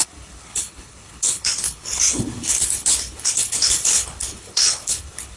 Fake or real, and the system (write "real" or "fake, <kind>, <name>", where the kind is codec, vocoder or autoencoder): fake, codec, HILCodec